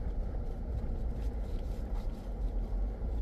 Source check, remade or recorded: remade